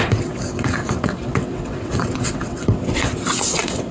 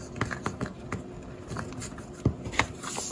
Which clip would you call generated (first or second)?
first